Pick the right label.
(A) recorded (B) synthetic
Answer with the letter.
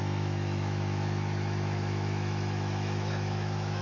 B